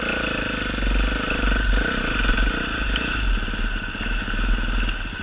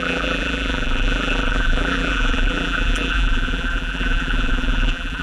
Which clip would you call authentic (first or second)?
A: first